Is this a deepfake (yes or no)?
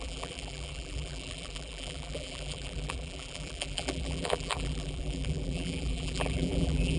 yes